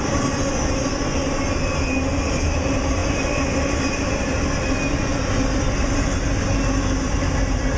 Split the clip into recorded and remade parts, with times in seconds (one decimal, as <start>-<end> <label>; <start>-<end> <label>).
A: 0.0-7.8 recorded